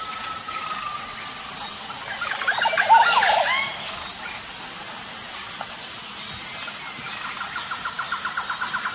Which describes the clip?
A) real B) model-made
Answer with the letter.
A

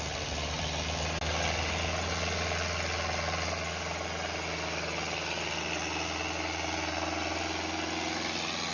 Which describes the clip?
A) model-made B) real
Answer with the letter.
B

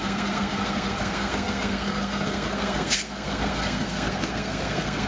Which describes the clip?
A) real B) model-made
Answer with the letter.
B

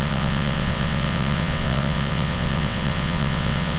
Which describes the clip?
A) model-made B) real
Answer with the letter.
A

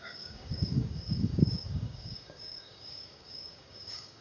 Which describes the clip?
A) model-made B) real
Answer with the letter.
A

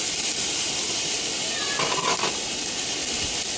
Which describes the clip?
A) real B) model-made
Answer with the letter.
A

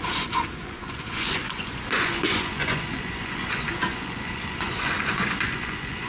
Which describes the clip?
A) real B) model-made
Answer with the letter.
B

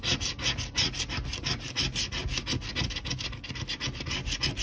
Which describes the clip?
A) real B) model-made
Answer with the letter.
A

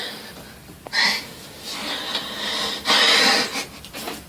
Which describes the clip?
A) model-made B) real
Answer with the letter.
B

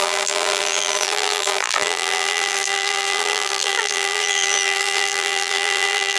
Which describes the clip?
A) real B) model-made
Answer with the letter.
B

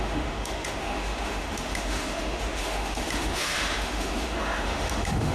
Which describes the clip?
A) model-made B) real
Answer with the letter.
A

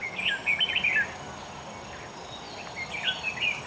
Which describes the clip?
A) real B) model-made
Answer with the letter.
A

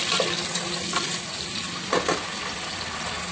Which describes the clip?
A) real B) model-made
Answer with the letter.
A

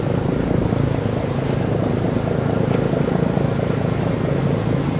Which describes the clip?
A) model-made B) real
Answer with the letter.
B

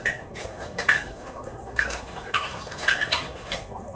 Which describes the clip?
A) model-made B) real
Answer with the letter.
A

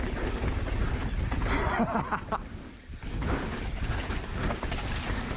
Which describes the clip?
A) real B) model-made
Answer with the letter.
A